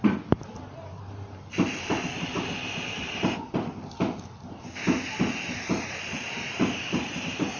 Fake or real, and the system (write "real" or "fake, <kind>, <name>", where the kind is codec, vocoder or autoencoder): real